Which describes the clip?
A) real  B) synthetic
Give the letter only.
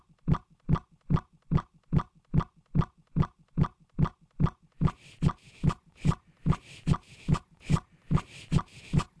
A